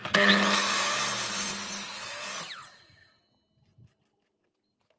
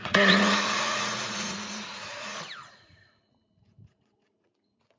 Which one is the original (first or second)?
first